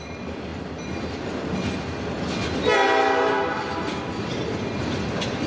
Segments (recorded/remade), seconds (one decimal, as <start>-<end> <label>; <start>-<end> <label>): 0.0-5.5 recorded